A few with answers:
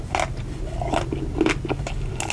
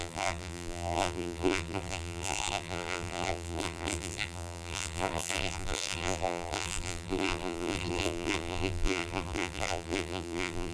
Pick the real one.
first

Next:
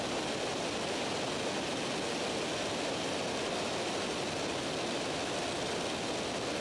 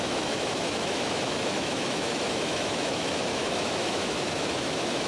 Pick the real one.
first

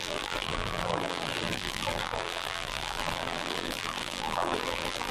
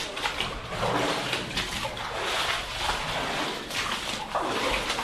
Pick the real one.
second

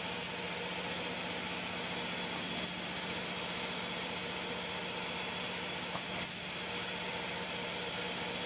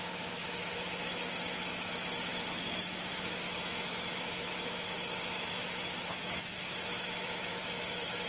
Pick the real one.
first